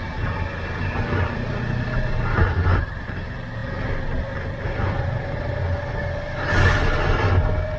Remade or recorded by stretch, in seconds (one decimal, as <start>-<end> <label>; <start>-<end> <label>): 0.0-7.8 recorded